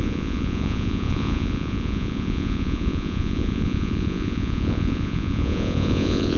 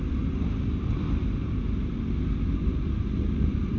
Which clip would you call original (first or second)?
second